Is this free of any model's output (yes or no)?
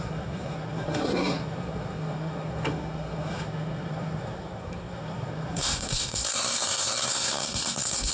no